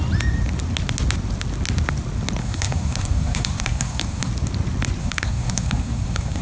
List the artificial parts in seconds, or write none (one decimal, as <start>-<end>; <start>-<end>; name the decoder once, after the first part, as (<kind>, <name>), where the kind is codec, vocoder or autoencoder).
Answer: 2.4-4.3 (codec, SNAC); 5.0-6.4